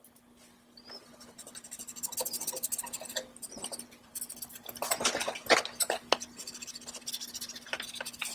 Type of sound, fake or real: real